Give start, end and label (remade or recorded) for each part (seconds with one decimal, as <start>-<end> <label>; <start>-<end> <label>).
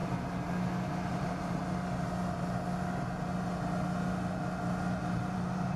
0.0-1.1 recorded; 1.1-1.6 remade; 1.6-5.1 recorded; 5.1-5.8 remade